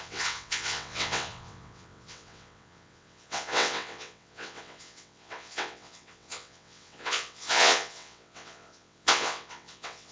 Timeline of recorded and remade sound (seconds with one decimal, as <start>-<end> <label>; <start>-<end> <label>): 0.0-10.1 remade